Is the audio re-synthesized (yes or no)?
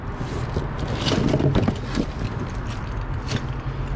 no